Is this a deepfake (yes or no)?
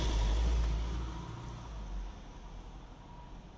no